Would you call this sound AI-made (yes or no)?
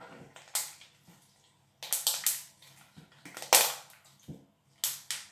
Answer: no